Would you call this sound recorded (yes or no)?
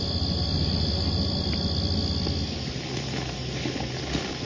yes